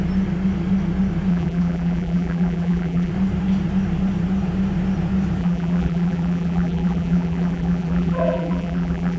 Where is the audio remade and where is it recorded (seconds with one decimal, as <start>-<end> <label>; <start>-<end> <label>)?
0.0-1.3 recorded; 1.3-3.1 remade; 3.1-5.4 recorded; 5.4-9.2 remade